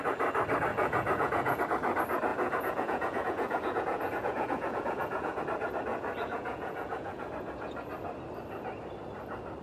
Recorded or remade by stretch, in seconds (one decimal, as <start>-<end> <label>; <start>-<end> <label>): 0.0-0.7 recorded; 0.7-1.6 remade; 1.6-2.3 recorded; 2.3-5.4 remade; 5.4-5.9 recorded; 5.9-7.3 remade; 7.3-9.6 recorded